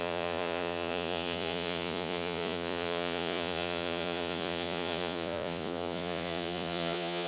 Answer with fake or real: fake